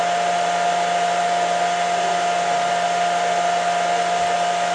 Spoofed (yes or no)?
no